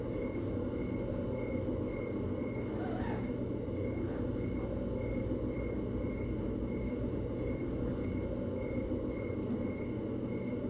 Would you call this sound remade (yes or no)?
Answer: no